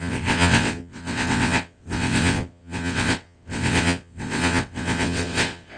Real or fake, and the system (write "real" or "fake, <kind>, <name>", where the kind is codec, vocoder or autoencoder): fake, vocoder, WaveNeXt